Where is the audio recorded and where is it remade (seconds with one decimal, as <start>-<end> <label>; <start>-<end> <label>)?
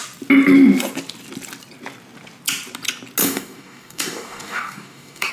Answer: 0.0-3.2 recorded; 3.2-5.3 remade